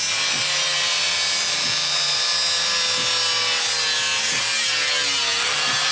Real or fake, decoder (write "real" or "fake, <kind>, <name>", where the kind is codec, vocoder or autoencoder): real